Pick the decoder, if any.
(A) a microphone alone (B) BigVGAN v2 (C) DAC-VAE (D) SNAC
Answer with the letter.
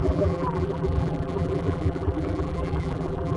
B